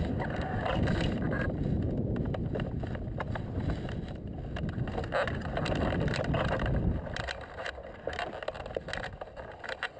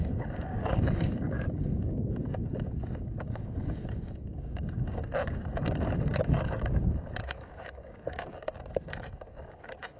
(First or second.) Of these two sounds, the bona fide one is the first